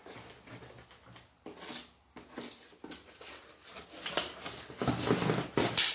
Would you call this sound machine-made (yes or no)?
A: no